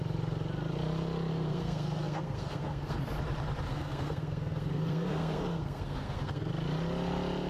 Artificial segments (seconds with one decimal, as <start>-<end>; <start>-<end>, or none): 1.3-3.0; 3.7-6.5